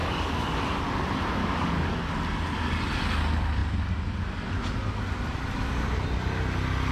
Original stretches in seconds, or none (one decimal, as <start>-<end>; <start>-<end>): 0.6-1.4; 2.1-6.9